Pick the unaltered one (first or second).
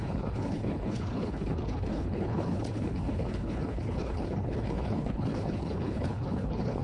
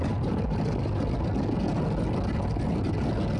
second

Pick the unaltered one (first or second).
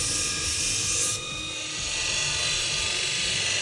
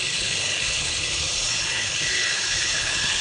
first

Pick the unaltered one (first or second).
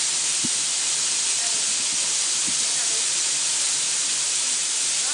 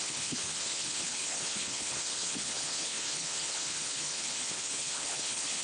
first